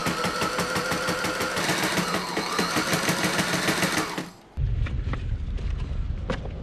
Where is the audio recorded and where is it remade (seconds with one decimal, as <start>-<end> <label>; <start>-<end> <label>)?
0.0-6.6 recorded